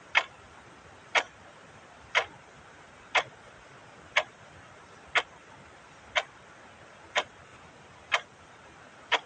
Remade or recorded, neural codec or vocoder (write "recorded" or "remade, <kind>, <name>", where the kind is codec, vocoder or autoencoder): recorded